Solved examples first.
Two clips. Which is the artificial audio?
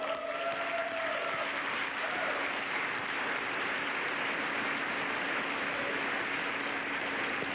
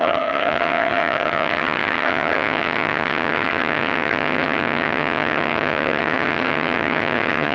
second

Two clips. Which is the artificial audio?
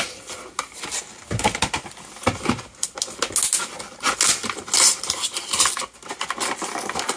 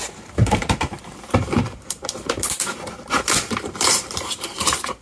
second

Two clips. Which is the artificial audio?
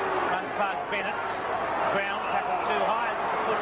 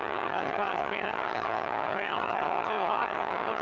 second